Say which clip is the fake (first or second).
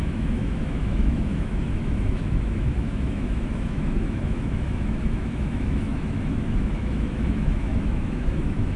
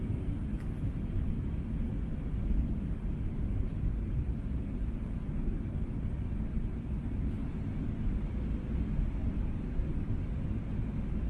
first